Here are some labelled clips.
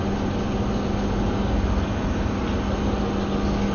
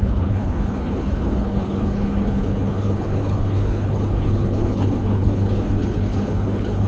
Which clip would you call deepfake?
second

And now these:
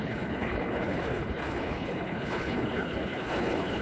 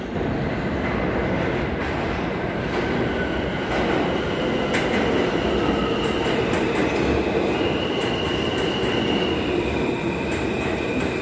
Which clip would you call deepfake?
first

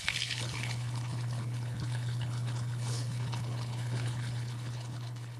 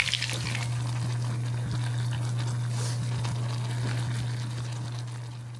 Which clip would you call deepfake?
first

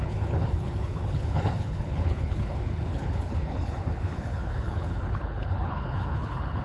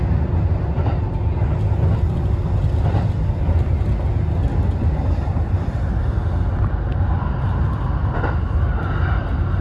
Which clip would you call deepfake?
first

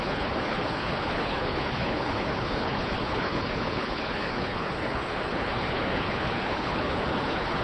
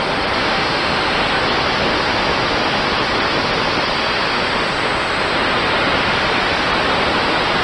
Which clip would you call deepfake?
first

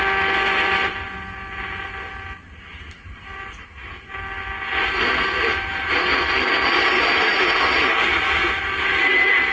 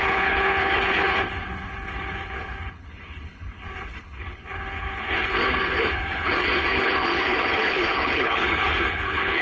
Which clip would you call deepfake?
second